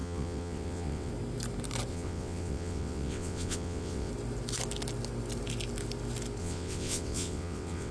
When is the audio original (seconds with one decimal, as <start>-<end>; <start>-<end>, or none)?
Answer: 1.1-1.9; 4.1-6.4